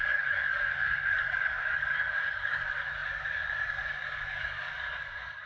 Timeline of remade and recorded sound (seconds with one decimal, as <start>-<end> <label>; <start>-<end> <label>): 0.0-5.5 remade